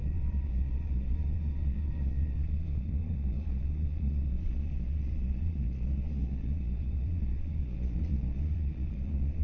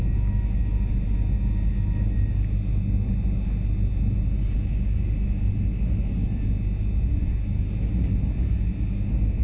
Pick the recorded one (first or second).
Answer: second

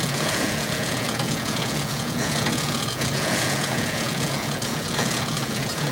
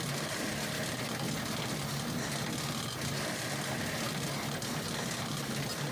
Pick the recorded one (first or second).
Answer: second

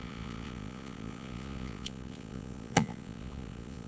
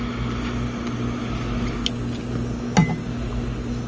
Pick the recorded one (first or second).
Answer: second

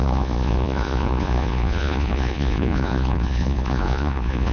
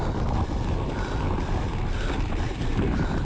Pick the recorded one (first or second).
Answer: second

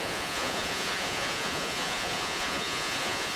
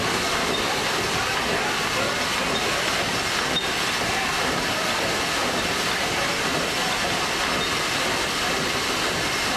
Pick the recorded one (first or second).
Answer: second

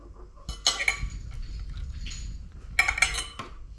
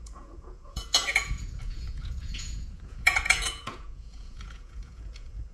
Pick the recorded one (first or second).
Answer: first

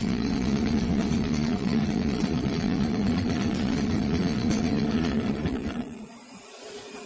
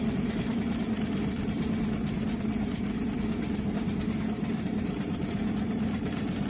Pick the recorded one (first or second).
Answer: second